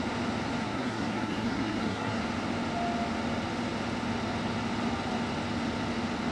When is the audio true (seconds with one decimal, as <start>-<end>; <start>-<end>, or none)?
0.0-0.6; 2.2-6.3